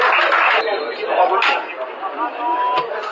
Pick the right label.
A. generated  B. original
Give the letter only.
B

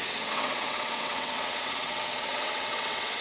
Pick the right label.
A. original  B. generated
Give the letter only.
B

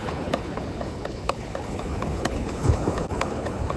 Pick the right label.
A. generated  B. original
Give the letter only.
A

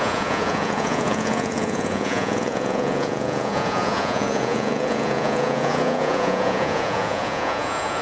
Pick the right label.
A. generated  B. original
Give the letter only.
A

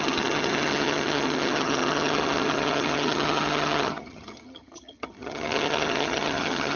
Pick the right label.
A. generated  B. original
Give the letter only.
A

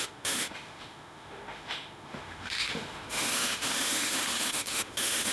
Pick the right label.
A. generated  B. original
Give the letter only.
A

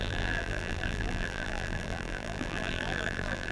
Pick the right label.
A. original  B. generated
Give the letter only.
B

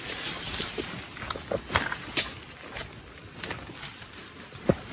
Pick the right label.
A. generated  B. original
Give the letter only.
B